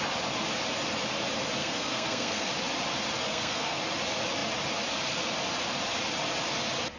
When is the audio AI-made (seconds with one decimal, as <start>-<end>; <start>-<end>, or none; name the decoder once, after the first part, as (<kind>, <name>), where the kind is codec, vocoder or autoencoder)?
1.6-2.5 (codec, SNAC); 3.3-3.8